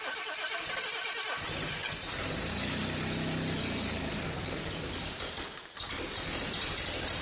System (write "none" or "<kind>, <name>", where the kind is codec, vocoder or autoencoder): none